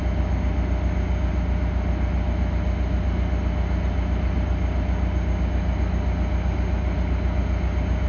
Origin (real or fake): real